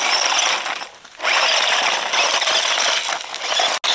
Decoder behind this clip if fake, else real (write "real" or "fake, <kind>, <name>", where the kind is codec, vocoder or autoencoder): real